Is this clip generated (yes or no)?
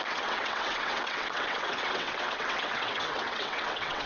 yes